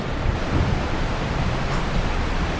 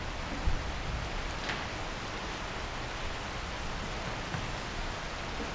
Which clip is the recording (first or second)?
second